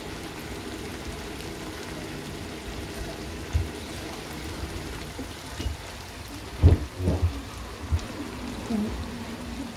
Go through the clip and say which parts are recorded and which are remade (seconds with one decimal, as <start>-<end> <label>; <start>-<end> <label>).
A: 0.0-9.8 recorded

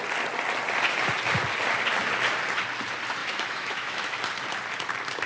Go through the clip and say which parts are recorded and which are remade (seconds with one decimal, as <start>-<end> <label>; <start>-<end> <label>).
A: 0.0-3.2 recorded; 3.2-4.2 remade; 4.2-5.3 recorded

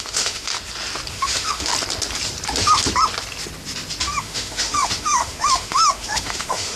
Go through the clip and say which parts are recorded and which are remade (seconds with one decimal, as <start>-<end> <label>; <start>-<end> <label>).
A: 0.0-0.5 remade; 0.5-1.1 recorded; 1.1-1.7 remade; 1.7-4.2 recorded; 4.2-6.8 remade

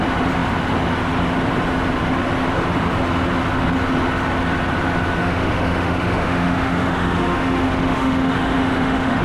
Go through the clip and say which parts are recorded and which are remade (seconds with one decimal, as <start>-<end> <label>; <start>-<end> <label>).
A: 0.0-5.2 recorded; 5.2-9.2 remade

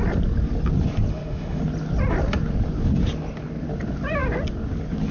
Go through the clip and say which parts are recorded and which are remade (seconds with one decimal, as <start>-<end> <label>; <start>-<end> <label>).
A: 0.0-1.1 recorded; 1.1-1.6 remade; 1.6-5.1 recorded

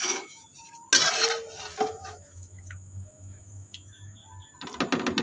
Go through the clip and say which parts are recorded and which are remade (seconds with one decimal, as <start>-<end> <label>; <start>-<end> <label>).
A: 0.0-0.5 remade; 0.5-1.9 recorded; 1.9-4.2 remade; 4.2-5.2 recorded